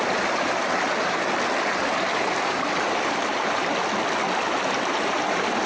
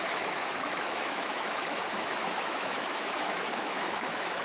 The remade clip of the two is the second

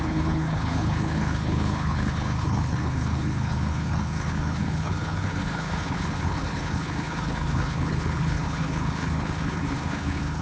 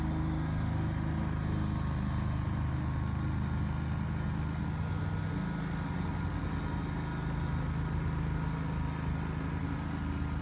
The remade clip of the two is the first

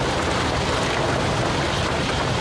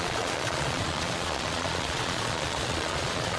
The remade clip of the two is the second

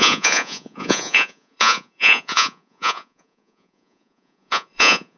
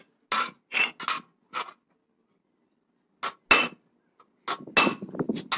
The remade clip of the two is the first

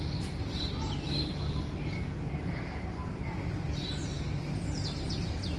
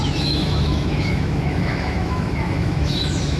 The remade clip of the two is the second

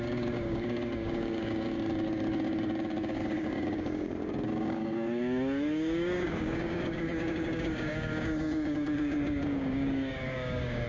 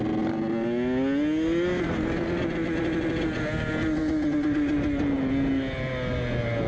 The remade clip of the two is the first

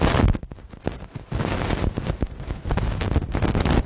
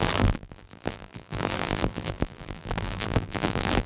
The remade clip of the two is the second